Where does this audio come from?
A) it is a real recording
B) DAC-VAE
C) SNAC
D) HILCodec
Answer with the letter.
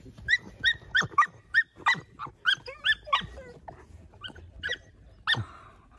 A